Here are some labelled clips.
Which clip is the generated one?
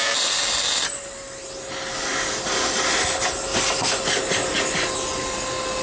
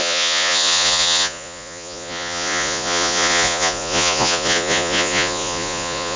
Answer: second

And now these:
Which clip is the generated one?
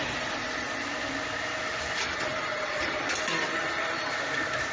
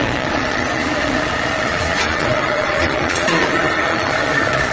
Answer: second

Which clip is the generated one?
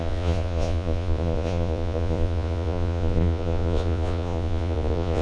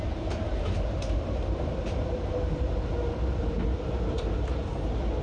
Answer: first